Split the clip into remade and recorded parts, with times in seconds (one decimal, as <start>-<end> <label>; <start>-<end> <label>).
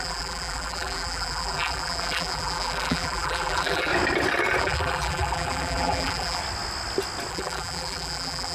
0.0-3.9 remade; 3.9-4.6 recorded; 4.6-6.4 remade; 6.4-7.3 recorded; 7.3-8.5 remade